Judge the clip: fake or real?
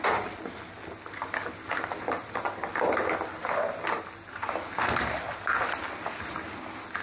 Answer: real